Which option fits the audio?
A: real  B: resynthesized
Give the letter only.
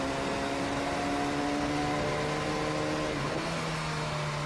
A